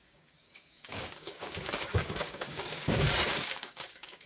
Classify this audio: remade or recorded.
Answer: remade